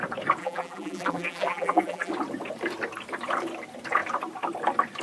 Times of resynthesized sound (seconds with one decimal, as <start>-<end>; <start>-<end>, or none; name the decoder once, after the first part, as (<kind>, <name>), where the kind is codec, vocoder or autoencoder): 0.4-2.1 (vocoder, BigVGAN v2)

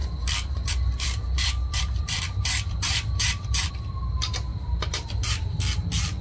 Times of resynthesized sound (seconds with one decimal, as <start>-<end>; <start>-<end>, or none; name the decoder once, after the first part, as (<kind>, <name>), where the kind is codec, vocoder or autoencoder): 0.0-3.7 (vocoder, BigVGAN v2); 4.5-5.2